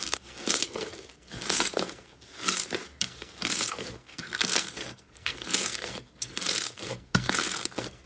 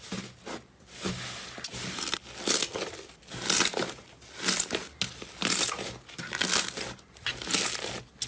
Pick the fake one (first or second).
first